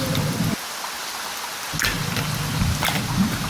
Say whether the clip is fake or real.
real